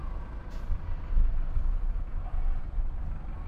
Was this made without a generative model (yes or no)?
yes